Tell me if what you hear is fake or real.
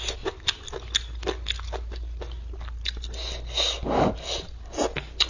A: real